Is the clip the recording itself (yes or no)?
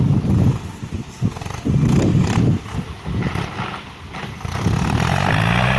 yes